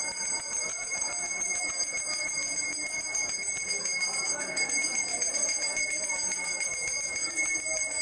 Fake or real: fake